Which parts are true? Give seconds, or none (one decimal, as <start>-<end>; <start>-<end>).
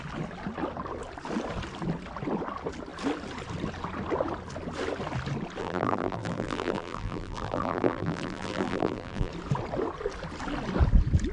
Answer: 0.0-5.6; 9.3-11.3